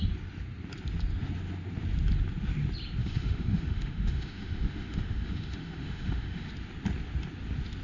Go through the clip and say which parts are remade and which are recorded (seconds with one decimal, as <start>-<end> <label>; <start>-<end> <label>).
0.0-3.0 recorded; 3.0-6.5 remade; 6.5-7.8 recorded